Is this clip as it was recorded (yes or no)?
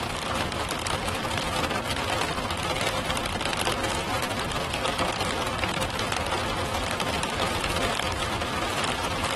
no